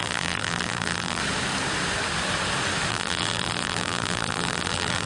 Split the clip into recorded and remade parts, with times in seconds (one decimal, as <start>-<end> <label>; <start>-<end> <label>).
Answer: 0.0-1.2 remade; 1.2-2.9 recorded; 2.9-5.1 remade